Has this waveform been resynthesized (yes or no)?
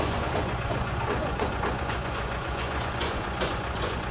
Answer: yes